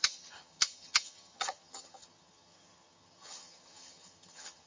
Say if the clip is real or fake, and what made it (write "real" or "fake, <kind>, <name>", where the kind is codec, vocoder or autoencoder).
fake, vocoder, HiFi-GAN